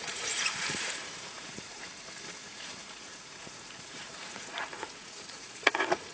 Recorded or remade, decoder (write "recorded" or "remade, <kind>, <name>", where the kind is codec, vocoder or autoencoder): remade, vocoder, Vocos